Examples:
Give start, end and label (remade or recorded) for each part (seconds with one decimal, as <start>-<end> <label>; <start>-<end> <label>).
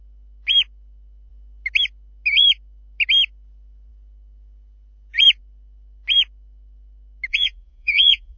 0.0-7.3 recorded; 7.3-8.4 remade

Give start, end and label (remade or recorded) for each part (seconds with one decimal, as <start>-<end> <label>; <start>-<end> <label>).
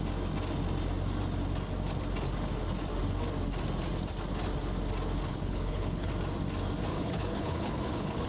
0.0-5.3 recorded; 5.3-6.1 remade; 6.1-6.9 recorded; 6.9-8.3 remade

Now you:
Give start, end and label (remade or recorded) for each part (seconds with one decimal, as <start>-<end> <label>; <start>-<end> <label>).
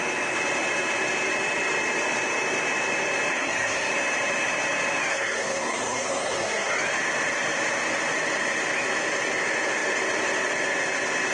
0.0-3.3 recorded; 3.3-3.9 remade; 3.9-5.1 recorded; 5.1-6.7 remade; 6.7-11.3 recorded